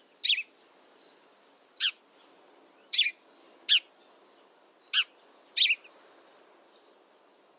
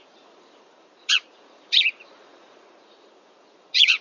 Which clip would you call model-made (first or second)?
second